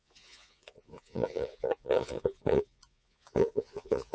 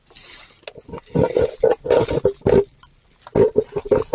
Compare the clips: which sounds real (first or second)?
second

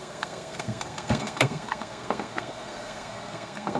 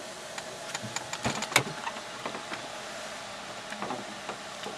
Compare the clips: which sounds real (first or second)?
second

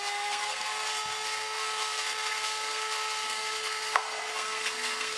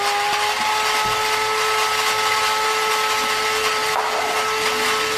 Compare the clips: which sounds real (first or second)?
second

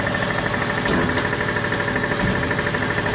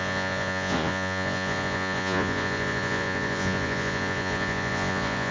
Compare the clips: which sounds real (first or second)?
first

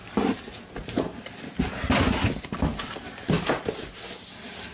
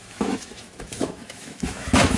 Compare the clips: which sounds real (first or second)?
first